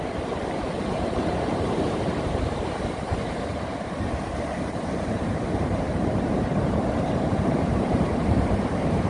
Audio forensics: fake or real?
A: fake